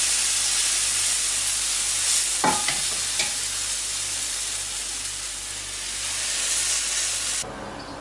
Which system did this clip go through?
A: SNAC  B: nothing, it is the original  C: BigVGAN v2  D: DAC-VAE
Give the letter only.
B